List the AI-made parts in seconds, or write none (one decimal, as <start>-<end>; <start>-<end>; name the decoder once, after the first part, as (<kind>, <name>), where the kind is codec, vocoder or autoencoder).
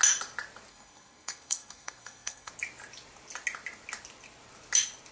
0.7-2.5 (codec, SNAC)